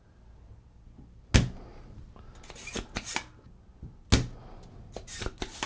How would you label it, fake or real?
real